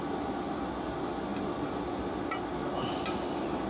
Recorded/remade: recorded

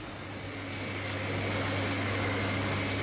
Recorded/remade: recorded